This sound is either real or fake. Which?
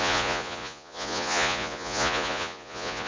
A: fake